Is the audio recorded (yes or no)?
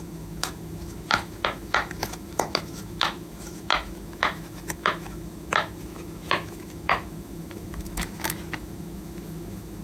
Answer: no